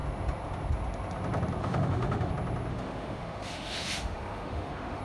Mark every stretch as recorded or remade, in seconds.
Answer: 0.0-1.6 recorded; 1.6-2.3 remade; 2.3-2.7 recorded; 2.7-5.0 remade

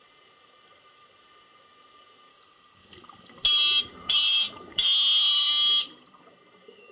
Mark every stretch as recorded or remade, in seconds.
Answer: 0.0-2.3 remade; 2.3-3.8 recorded; 3.8-5.5 remade; 5.5-6.2 recorded; 6.2-6.9 remade

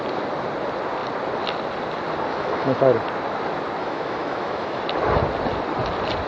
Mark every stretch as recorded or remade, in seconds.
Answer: 0.0-2.3 recorded; 2.3-2.8 remade; 2.8-3.8 recorded; 3.8-4.8 remade; 4.8-6.3 recorded

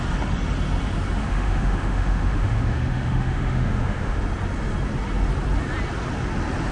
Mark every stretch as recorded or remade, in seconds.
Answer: 0.0-1.2 recorded; 1.2-4.2 remade; 4.2-6.7 recorded

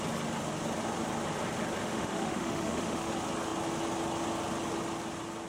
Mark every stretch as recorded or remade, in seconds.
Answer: 0.0-1.8 recorded; 1.8-3.1 remade; 3.1-5.5 recorded

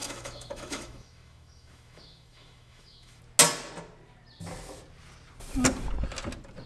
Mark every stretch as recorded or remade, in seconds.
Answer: 0.0-3.2 remade; 3.2-6.7 recorded